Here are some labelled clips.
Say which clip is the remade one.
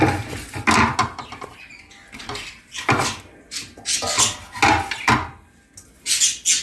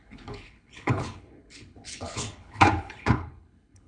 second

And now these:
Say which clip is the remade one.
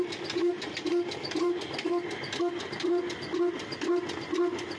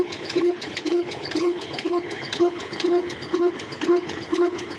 second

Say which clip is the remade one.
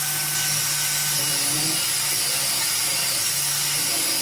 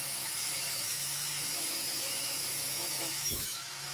second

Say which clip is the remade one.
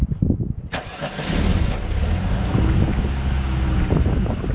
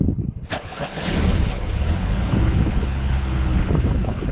second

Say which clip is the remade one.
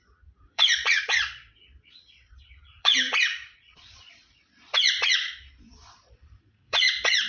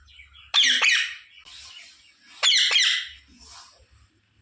first